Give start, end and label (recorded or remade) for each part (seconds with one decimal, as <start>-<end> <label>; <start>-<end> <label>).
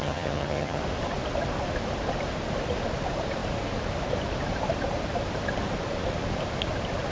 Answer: 0.0-0.8 remade; 0.8-7.1 recorded